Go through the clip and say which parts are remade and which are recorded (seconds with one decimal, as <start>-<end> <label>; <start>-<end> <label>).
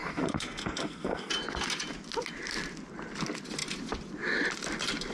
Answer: 0.0-1.3 remade; 1.3-5.1 recorded